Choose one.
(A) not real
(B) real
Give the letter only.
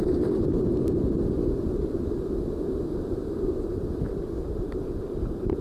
B